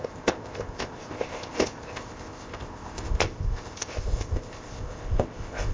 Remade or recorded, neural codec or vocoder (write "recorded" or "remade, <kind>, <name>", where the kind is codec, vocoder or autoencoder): remade, codec, ZipCodec